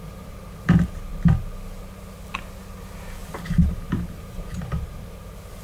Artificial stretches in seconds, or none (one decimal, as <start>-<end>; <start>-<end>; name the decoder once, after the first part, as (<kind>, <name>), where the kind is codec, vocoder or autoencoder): 0.0-1.1 (vocoder, BigVGAN v2); 2.6-5.6